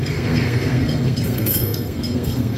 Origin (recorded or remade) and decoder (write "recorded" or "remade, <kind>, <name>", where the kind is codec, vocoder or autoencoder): remade, codec, SNAC